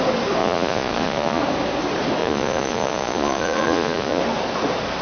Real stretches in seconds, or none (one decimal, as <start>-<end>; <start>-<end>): 0.0-0.4; 1.4-2.2; 4.2-5.0